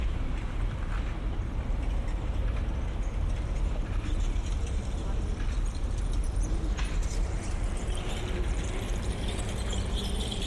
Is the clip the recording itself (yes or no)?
no